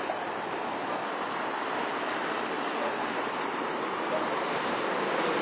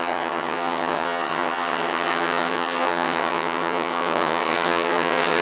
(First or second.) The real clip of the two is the first